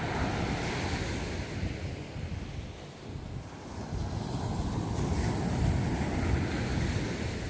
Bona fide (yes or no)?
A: yes